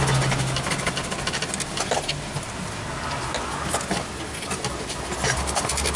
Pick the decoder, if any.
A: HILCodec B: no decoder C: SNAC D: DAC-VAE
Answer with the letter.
B